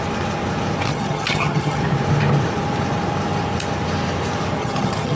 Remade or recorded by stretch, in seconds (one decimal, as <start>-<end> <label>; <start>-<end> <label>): 0.0-0.9 recorded; 0.9-1.8 remade; 1.8-4.6 recorded; 4.6-5.2 remade